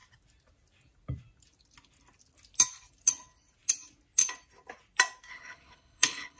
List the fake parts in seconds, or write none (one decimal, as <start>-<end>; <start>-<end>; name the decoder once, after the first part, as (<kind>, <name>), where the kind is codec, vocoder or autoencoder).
5.3-6.4 (codec, HILCodec)